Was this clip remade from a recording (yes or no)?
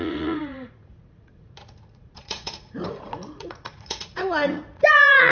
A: yes